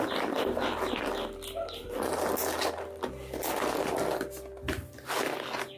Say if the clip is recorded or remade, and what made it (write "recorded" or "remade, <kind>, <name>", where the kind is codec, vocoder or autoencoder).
recorded